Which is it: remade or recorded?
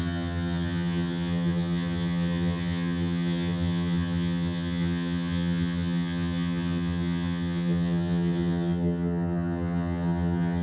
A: remade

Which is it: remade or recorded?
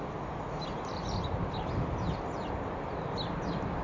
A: recorded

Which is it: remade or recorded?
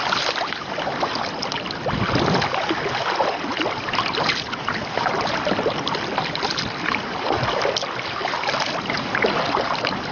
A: recorded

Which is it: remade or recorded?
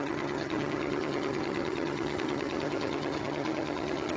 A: remade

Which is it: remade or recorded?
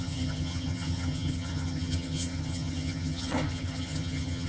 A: remade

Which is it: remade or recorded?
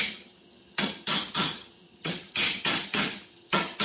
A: remade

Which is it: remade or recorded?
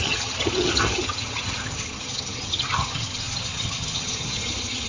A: remade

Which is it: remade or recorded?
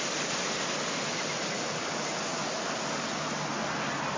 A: recorded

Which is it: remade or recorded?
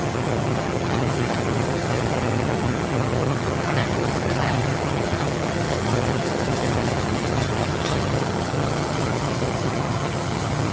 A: remade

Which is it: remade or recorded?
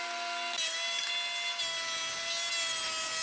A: recorded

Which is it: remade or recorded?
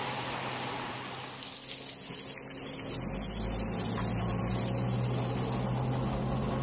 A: recorded